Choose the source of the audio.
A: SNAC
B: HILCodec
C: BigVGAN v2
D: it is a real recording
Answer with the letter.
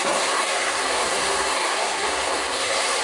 A